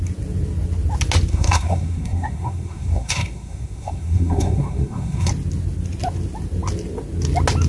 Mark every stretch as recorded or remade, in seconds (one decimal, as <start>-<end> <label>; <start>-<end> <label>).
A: 0.0-1.3 recorded; 1.3-5.3 remade; 5.3-7.7 recorded